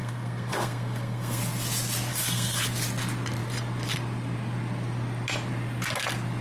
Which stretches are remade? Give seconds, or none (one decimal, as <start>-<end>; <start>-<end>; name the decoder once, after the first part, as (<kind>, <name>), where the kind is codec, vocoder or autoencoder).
0.0-1.4 (codec, SNAC); 2.1-2.6